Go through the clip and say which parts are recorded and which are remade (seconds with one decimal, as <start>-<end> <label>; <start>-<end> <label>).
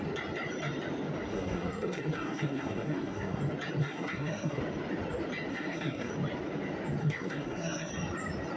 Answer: 0.0-1.3 recorded; 1.3-3.4 remade; 3.4-3.8 recorded; 3.8-4.6 remade; 4.6-5.5 recorded; 5.5-6.1 remade; 6.1-7.0 recorded; 7.0-7.9 remade; 7.9-8.6 recorded